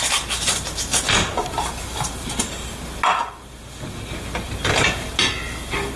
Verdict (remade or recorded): recorded